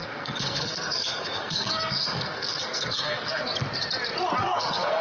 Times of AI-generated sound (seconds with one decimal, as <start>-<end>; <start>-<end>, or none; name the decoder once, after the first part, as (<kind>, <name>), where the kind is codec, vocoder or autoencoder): 0.0-3.5 (codec, SNAC); 4.4-5.0